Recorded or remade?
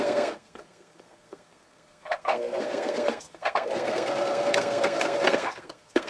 remade